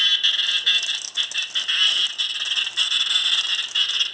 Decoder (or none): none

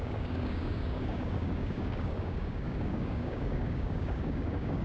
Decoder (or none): codec, DAC